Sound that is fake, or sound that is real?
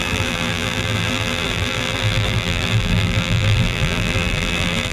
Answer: fake